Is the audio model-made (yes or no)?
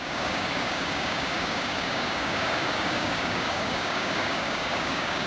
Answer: yes